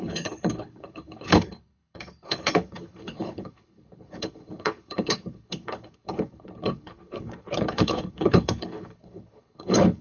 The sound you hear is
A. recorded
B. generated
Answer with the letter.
B